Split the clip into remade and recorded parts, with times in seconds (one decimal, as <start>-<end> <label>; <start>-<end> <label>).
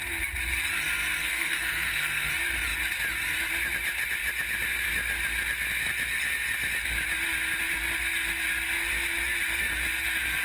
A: 0.0-1.2 recorded; 1.2-2.3 remade; 2.3-10.4 recorded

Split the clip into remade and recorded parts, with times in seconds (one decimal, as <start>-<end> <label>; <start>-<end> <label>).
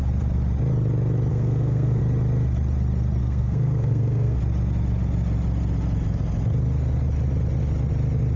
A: 0.0-1.3 recorded; 1.3-2.0 remade; 2.0-3.2 recorded; 3.2-4.4 remade; 4.4-8.4 recorded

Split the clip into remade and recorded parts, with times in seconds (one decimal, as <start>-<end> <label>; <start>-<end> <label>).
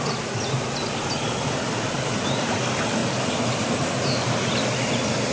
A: 0.0-5.3 recorded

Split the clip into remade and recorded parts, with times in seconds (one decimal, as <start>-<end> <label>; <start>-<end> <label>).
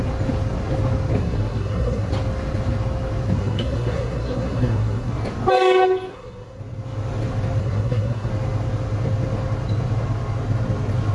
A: 0.0-1.2 recorded; 1.2-2.1 remade; 2.1-3.4 recorded; 3.4-5.1 remade; 5.1-6.1 recorded; 6.1-6.6 remade; 6.6-7.6 recorded; 7.6-8.3 remade; 8.3-11.1 recorded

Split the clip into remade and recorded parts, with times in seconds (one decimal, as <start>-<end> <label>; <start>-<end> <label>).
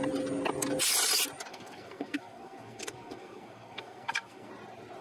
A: 0.0-1.5 recorded; 1.5-4.5 remade; 4.5-5.0 recorded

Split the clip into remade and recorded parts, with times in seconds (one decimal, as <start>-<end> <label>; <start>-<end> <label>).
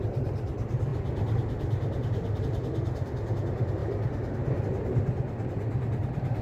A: 0.0-6.4 recorded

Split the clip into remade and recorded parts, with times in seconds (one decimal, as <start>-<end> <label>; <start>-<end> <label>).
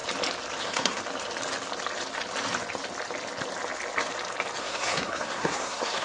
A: 0.0-0.6 recorded; 0.6-1.0 remade; 1.0-4.6 recorded; 4.6-6.0 remade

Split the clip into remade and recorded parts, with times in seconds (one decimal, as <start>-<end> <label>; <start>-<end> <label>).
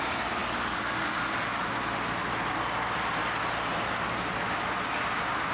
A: 0.0-5.5 recorded